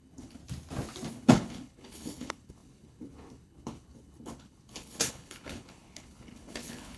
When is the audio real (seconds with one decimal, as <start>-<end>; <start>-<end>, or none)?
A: 0.4-1.1